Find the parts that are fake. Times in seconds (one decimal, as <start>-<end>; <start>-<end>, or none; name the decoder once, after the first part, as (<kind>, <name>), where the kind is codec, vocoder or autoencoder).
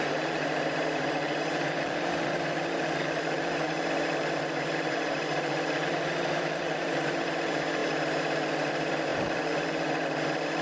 0.0-10.6 (vocoder, BigVGAN v2)